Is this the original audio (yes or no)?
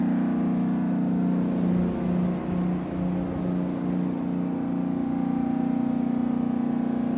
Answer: yes